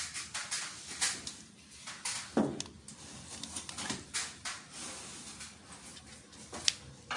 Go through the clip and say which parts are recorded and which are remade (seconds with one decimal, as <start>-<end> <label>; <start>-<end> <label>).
0.0-7.2 recorded